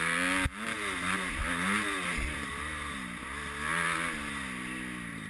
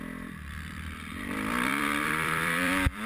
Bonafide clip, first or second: first